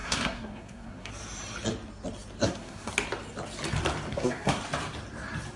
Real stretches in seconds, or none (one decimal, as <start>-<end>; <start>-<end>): 1.1-2.4; 2.9-4.1; 4.6-5.6